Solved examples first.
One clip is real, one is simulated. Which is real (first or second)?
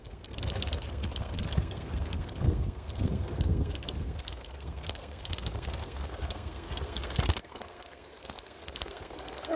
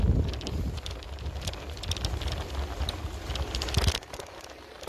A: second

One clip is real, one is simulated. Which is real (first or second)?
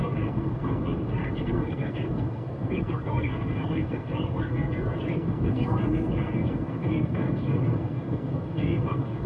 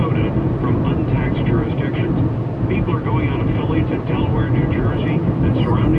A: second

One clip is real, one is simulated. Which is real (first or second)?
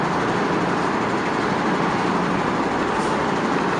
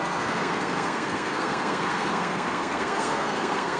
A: first